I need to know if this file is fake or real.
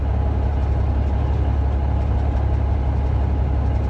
real